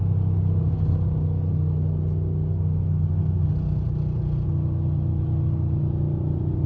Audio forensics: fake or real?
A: real